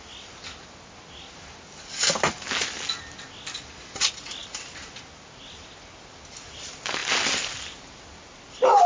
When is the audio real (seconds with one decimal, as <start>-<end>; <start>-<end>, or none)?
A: 0.0-8.9